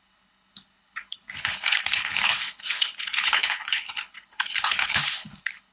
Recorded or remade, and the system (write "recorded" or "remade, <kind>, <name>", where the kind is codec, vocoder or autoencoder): remade, codec, HILCodec